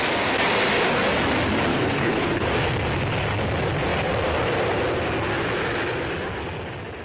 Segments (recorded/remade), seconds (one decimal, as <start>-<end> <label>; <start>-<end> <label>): 0.0-1.7 recorded; 1.7-2.5 remade; 2.5-7.0 recorded